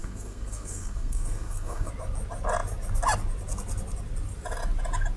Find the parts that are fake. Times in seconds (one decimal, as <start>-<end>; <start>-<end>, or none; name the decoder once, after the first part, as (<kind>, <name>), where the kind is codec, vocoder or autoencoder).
0.0-1.9 (codec, SNAC)